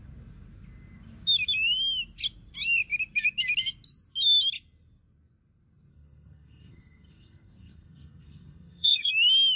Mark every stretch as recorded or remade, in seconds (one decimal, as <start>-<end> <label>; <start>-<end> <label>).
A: 0.0-5.9 recorded; 5.9-9.1 remade; 9.1-9.6 recorded